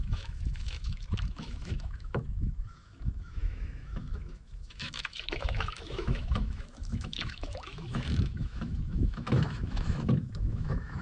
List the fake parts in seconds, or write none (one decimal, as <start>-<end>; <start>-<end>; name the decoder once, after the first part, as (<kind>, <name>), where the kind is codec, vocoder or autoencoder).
0.0-11.0 (autoencoder, DAC-VAE)